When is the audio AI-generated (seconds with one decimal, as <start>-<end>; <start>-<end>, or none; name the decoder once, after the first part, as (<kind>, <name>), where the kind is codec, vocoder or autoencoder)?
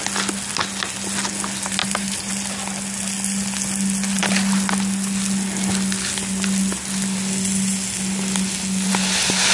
1.8-2.3 (vocoder, BigVGAN v2)